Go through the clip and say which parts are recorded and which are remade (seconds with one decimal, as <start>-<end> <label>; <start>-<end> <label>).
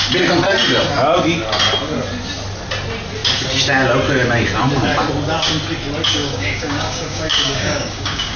0.0-6.2 recorded; 6.2-8.4 remade